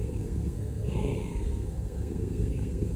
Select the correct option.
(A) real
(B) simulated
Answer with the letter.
B